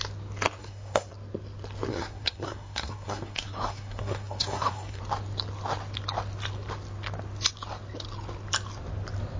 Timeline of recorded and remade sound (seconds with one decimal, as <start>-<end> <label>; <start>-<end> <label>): 0.0-0.6 recorded; 0.6-1.1 remade; 1.1-1.9 recorded; 1.9-5.0 remade; 5.0-9.4 recorded